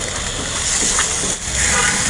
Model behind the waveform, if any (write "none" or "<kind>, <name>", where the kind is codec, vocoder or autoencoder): none